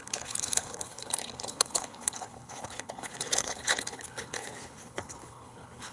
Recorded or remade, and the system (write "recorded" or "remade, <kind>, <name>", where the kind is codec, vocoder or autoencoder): remade, codec, HILCodec